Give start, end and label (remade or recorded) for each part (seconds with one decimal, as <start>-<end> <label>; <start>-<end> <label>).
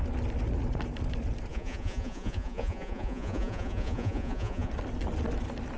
0.0-1.5 recorded; 1.5-4.7 remade; 4.7-5.8 recorded